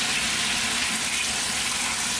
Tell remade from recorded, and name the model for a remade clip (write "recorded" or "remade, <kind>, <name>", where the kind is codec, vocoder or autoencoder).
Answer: recorded